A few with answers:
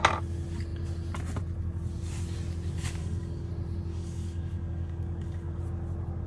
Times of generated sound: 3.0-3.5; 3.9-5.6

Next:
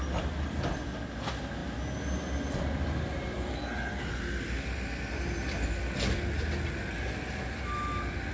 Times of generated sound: none

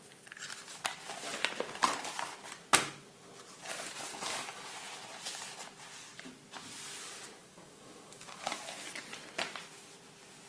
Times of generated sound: 4.1-4.7; 7.4-8.6

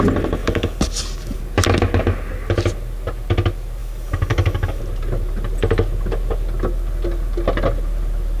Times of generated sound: 0.4-1.4; 3.8-4.8

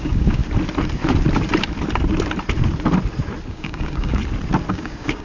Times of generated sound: 0.0-0.4; 3.5-4.2; 4.7-5.2

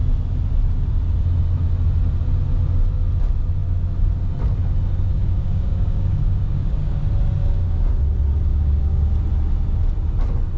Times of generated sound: 5.2-7.0; 7.4-8.0; 8.5-9.1

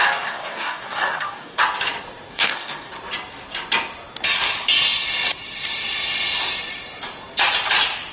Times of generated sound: 0.0-1.6; 2.3-2.9